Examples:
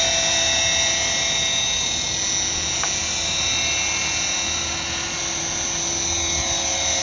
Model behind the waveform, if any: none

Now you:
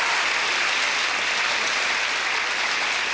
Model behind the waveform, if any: none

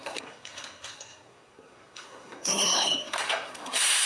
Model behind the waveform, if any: codec, SNAC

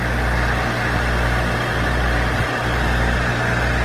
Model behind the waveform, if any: none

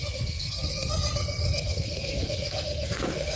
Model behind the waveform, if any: codec, SNAC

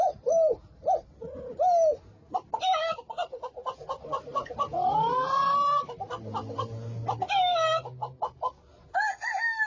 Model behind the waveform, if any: none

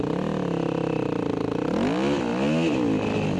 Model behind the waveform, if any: none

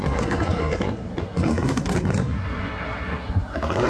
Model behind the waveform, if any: codec, SNAC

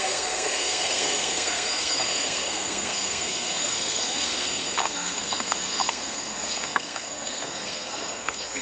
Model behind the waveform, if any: codec, SNAC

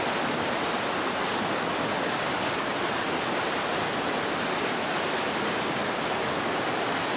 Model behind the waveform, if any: none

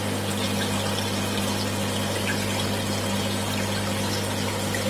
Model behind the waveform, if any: none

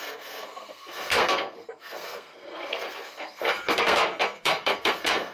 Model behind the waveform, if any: codec, SNAC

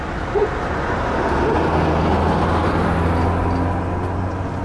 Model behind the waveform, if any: none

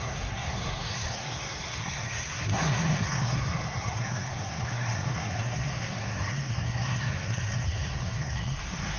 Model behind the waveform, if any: codec, SNAC